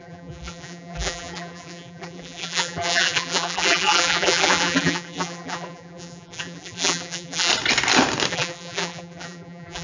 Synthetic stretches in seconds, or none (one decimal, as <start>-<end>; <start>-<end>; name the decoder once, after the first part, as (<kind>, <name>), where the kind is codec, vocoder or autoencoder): 0.0-7.5 (vocoder, BigVGAN v2); 8.3-9.8